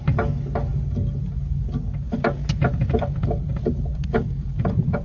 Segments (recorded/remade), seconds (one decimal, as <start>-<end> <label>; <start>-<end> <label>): 0.0-5.0 recorded